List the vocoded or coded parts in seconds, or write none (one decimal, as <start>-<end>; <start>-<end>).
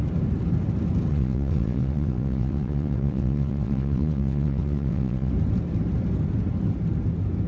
1.1-5.3